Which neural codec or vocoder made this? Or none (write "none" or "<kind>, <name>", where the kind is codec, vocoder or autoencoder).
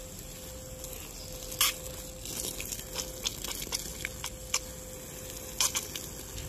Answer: none